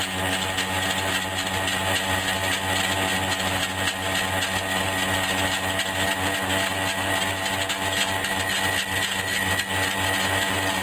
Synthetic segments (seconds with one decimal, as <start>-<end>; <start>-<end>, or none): none